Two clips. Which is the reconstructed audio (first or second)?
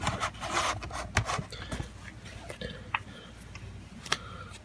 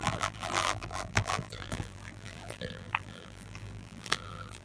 second